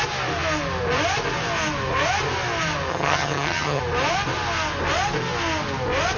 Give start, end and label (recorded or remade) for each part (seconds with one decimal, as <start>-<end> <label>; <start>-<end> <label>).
0.0-2.9 recorded; 2.9-3.8 remade; 3.8-6.2 recorded